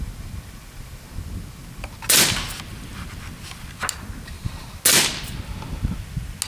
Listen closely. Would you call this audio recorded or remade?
recorded